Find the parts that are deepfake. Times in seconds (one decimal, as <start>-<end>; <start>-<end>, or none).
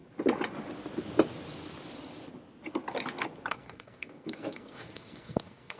3.5-5.8